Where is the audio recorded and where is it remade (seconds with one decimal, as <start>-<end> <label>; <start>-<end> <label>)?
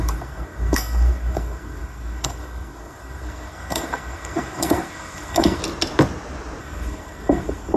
0.0-5.6 remade; 5.6-6.6 recorded; 6.6-7.8 remade